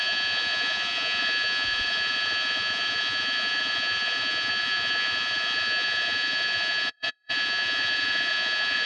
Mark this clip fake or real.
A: fake